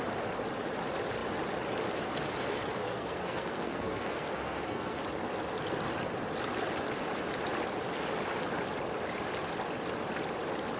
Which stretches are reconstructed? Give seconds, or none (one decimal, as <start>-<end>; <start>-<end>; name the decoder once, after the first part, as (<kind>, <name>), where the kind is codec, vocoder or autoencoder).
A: 2.8-5.0 (codec, SNAC)